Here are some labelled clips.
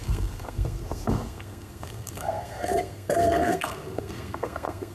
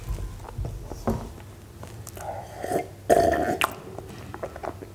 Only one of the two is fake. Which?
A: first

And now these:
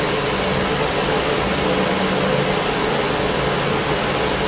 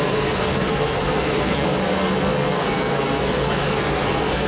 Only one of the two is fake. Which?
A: second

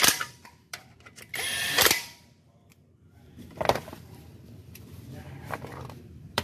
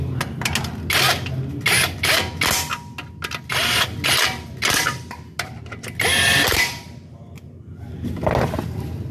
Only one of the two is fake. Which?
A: first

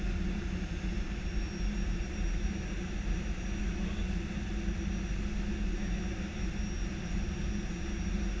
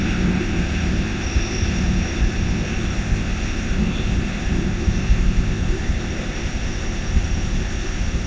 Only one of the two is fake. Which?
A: second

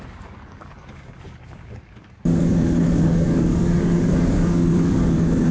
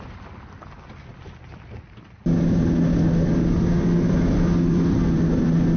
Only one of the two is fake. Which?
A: first